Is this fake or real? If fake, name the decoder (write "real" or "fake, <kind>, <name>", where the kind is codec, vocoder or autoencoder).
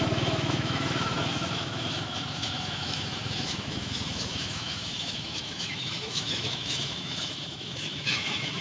fake, autoencoder, DAC-VAE